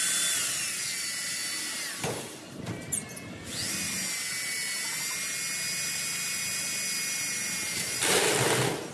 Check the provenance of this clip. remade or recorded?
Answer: recorded